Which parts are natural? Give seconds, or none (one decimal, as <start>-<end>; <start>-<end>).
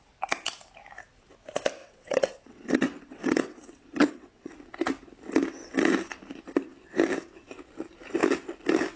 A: 0.0-1.8; 4.7-9.0